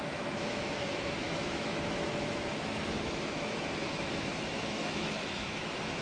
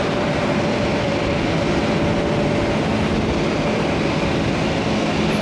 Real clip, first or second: second